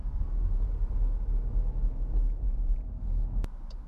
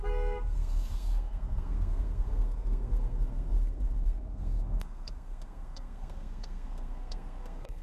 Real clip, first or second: first